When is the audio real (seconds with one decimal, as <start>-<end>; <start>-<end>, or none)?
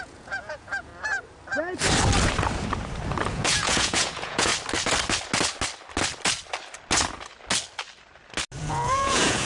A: 0.9-3.3; 4.5-8.6